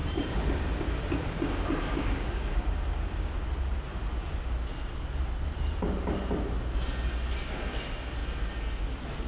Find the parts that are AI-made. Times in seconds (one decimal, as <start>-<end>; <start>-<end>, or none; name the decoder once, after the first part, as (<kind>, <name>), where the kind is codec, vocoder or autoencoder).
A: 0.0-3.3 (codec, DAC)